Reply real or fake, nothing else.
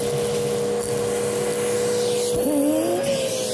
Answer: real